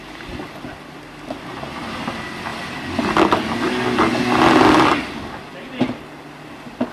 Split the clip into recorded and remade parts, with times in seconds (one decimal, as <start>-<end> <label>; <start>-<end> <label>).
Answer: 0.0-6.9 recorded